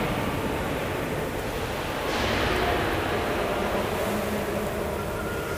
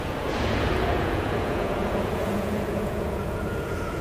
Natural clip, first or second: first